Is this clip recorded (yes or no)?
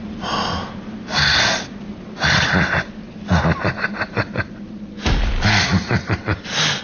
yes